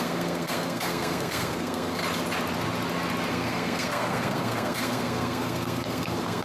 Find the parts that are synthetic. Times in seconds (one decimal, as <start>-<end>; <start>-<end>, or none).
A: 0.0-2.0; 3.3-6.4